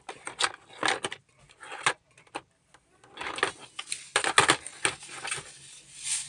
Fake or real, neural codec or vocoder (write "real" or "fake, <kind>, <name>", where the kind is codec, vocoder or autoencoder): real